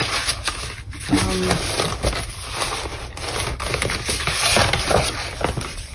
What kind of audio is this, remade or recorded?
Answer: recorded